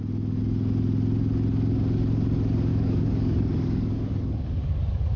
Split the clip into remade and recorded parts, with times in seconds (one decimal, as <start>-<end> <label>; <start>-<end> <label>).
0.0-2.7 recorded; 2.7-5.2 remade